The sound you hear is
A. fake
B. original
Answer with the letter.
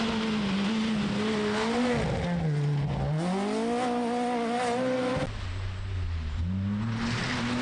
B